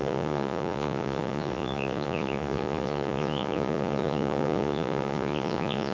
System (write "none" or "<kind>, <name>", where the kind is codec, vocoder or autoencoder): vocoder, Vocos